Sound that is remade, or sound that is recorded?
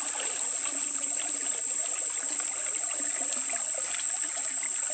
recorded